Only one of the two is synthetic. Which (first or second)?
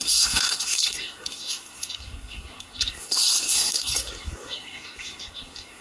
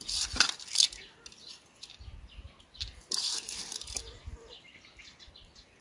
first